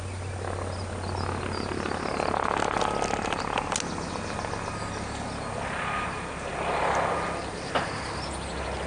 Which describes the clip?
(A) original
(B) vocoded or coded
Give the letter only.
A